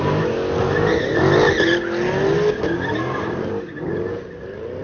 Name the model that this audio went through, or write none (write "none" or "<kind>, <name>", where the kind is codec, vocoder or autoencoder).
none